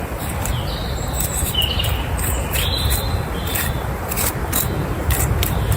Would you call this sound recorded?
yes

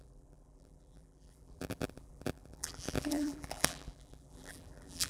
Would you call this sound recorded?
no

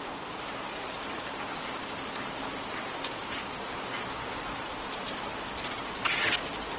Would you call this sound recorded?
yes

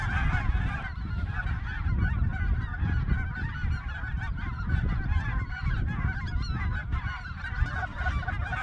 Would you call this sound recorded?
yes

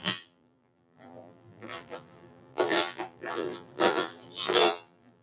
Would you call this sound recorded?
no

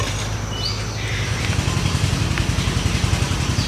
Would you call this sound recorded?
yes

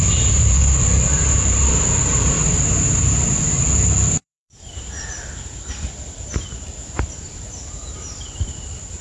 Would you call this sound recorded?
no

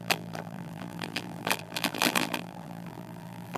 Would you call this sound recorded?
no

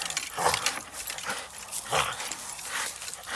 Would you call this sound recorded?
yes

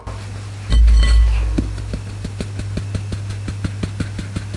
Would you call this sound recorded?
yes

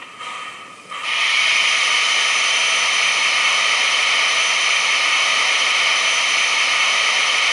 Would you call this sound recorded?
yes